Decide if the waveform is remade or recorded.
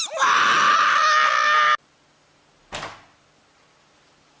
recorded